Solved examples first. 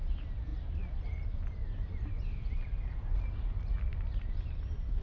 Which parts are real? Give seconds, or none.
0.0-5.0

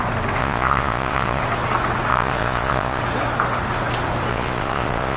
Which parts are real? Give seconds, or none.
0.0-0.4; 1.4-2.1; 3.0-4.3